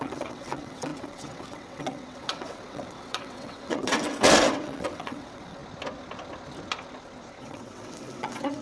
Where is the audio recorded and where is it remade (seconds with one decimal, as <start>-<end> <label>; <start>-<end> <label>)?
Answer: 0.0-5.6 remade; 5.6-7.4 recorded; 7.4-8.6 remade

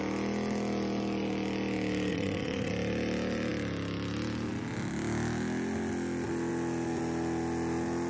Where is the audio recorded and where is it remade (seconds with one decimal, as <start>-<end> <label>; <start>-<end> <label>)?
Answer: 0.0-2.1 recorded; 2.1-2.7 remade; 2.7-8.1 recorded